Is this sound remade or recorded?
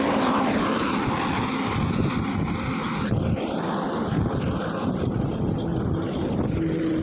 recorded